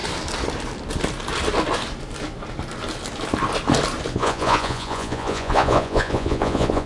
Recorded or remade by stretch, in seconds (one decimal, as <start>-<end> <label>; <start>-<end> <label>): 0.0-4.1 recorded; 4.1-6.9 remade